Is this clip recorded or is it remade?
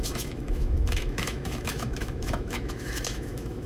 remade